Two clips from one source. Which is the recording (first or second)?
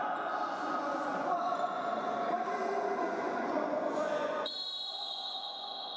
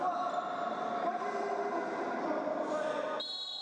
second